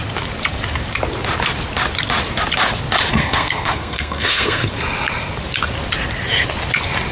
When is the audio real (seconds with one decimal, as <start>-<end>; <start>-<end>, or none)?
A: 0.0-3.1; 4.7-7.1